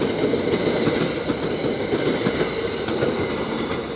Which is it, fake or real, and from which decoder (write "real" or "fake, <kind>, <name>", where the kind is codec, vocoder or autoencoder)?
real